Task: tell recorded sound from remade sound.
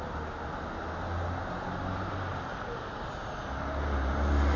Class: recorded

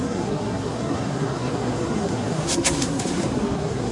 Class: remade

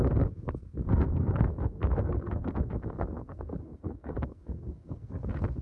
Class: remade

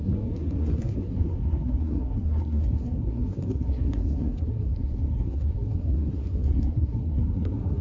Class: remade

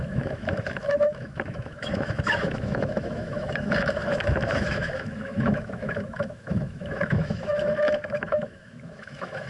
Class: remade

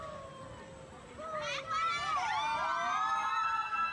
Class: recorded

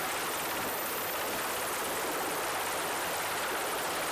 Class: recorded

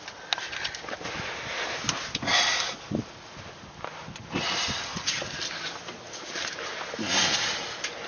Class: recorded